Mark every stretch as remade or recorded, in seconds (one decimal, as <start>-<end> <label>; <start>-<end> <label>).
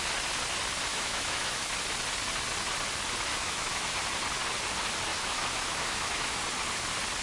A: 0.0-0.9 recorded; 0.9-1.7 remade; 1.7-3.3 recorded; 3.3-4.0 remade; 4.0-5.1 recorded; 5.1-6.4 remade; 6.4-7.2 recorded